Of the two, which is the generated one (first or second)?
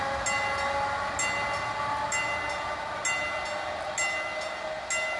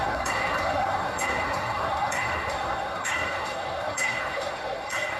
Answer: second